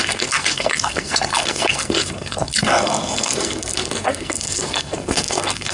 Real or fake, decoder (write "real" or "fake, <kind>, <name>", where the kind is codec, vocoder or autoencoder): fake, codec, SNAC